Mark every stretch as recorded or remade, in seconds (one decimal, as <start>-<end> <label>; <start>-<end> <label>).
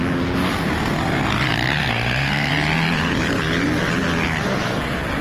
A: 0.0-1.8 recorded; 1.8-2.5 remade; 2.5-5.2 recorded